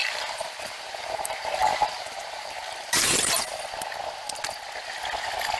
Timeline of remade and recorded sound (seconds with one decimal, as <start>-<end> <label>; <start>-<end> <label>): 0.0-3.4 remade; 3.4-5.6 recorded

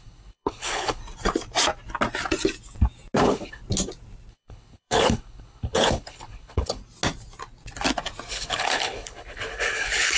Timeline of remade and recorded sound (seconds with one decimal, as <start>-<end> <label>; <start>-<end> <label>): 0.0-1.0 remade; 1.0-3.2 recorded; 3.2-3.6 remade; 3.6-4.3 recorded; 4.3-6.8 remade; 6.8-8.3 recorded; 8.3-10.2 remade

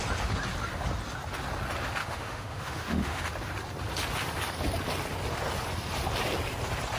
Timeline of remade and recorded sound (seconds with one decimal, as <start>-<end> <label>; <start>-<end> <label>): 0.0-2.0 recorded; 2.0-3.2 remade; 3.2-7.0 recorded

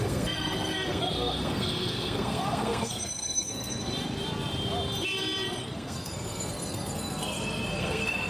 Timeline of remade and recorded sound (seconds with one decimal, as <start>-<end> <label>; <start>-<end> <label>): 0.0-3.9 remade; 3.9-5.6 recorded; 5.6-8.3 remade

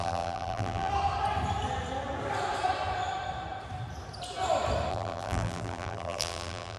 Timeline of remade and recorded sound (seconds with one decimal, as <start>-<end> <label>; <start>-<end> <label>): 0.0-0.9 remade; 0.9-4.9 recorded; 4.9-6.8 remade

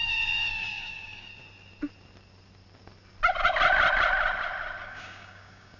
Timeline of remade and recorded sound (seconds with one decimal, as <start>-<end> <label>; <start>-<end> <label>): 0.0-1.3 remade; 1.3-4.8 recorded; 4.8-5.8 remade

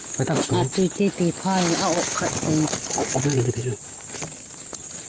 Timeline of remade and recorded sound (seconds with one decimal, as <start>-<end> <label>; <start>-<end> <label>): 0.0-3.3 recorded; 3.3-3.9 remade; 3.9-5.1 recorded

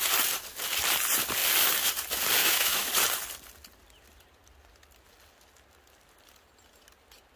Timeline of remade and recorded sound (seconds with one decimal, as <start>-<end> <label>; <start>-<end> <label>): 0.0-2.4 recorded; 2.4-2.9 remade; 2.9-7.4 recorded